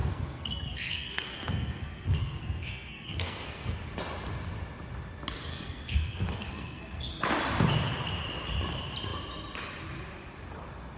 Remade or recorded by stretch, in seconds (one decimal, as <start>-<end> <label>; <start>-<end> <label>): 0.0-3.8 remade; 3.8-5.5 recorded; 5.5-7.1 remade; 7.1-11.0 recorded